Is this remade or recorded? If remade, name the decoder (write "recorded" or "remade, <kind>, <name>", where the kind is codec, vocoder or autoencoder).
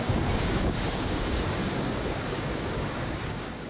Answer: remade, codec, DAC